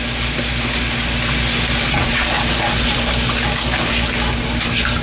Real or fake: real